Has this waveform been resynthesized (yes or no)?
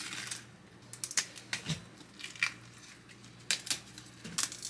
no